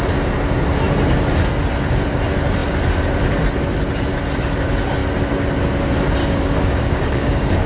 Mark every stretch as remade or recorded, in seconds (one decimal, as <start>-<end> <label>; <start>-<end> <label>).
0.0-6.2 recorded; 6.2-7.7 remade